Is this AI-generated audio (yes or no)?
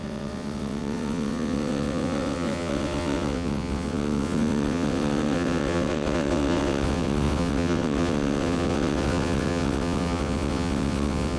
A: yes